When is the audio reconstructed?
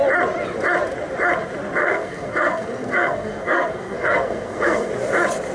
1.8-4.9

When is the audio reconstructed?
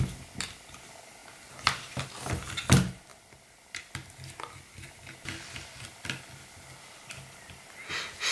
none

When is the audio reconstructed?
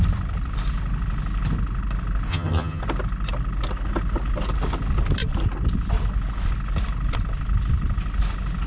2.3-2.8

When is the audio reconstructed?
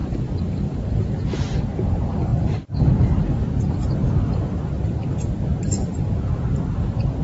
0.0-1.2; 2.3-2.8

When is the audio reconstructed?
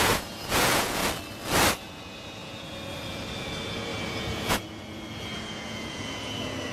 0.0-1.0; 1.8-6.7